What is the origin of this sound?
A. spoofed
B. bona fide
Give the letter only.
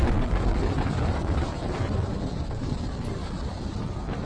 B